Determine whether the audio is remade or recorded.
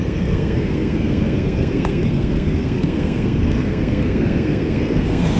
remade